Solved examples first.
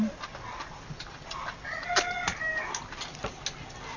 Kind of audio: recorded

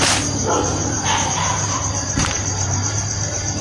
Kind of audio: remade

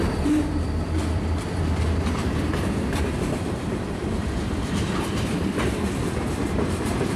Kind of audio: remade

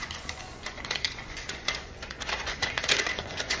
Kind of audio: remade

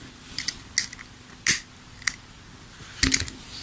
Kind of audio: recorded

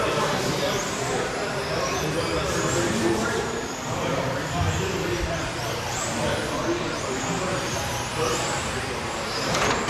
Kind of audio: remade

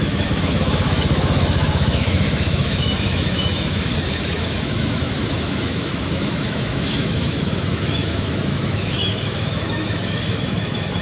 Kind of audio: remade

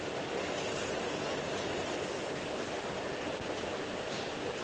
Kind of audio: recorded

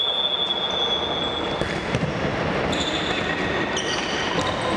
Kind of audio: recorded